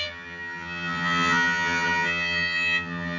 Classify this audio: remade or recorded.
remade